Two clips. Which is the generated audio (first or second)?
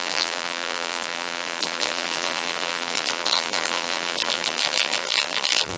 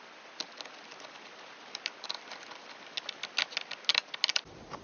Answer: first